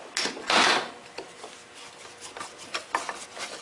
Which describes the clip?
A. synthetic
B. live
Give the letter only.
B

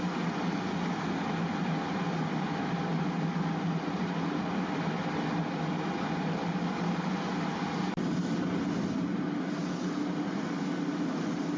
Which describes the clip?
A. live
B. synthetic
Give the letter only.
A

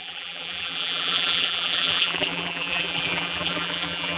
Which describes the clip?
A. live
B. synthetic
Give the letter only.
B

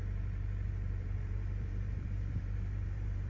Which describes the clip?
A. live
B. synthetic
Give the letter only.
B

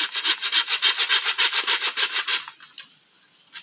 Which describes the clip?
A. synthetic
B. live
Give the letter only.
B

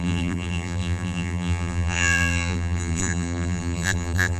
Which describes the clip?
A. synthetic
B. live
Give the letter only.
A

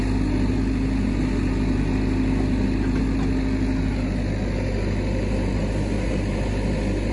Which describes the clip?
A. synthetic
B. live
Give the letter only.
B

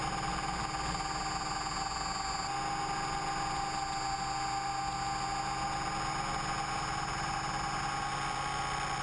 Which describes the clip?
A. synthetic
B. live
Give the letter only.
B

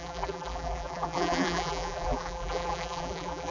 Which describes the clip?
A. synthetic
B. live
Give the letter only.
A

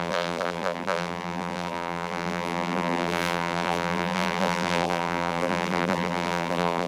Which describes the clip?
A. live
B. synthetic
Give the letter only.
B